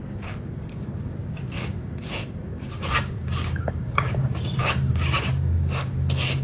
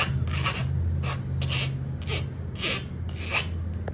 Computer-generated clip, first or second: first